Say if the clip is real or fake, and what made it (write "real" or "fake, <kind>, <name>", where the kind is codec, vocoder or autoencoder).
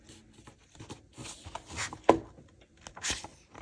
real